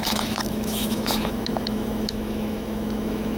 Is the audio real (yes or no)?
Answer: no